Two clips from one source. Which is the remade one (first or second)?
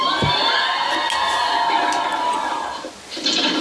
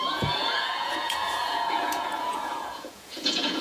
second